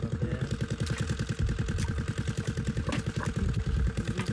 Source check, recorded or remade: recorded